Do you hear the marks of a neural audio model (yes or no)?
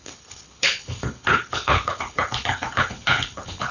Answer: yes